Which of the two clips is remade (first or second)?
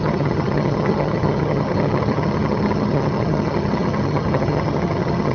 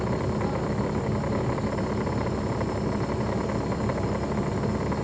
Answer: first